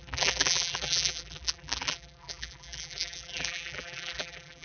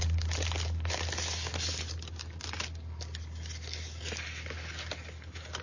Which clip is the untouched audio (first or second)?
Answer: second